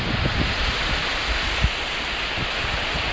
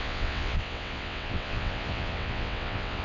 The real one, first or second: first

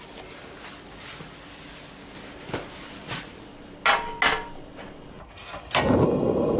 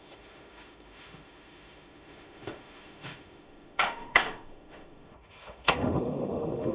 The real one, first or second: first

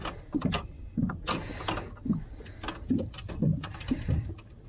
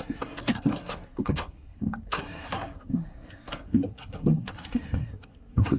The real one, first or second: first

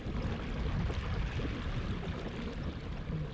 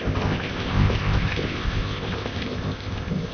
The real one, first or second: first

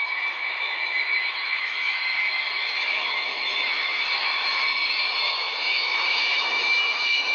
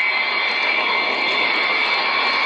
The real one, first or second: second